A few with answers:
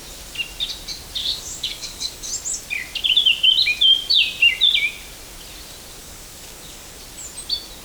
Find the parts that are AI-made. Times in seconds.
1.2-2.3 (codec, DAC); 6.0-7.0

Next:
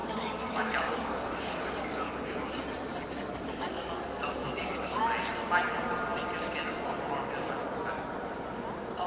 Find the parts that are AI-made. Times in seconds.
0.0-2.1 (codec, DAC); 2.9-5.0

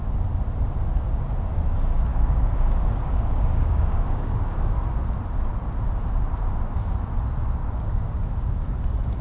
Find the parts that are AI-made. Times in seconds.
2.1-4.8 (codec, DAC); 7.6-8.3